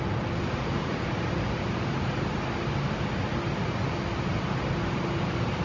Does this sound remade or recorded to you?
recorded